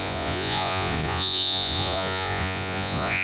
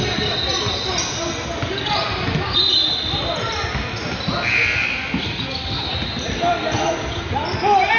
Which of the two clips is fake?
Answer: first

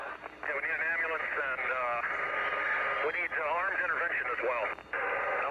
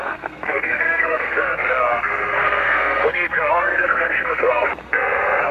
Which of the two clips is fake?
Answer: second